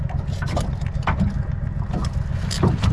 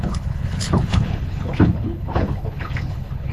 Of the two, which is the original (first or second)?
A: first